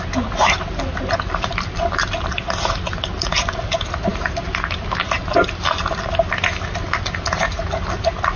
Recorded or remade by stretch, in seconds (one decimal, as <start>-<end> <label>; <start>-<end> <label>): 0.0-8.4 recorded